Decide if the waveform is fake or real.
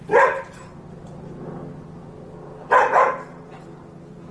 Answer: real